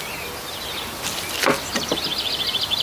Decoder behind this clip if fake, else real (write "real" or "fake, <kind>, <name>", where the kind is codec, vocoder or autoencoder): real